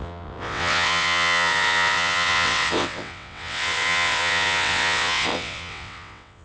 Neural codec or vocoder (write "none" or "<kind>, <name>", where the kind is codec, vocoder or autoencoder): vocoder, WaveNeXt